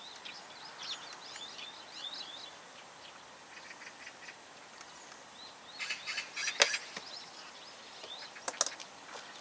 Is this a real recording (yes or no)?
yes